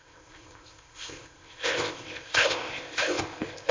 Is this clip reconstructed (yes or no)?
yes